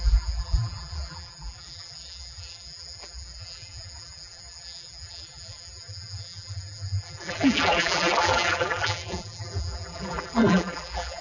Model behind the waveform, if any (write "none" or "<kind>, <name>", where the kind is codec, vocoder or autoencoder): vocoder, BigVGAN v2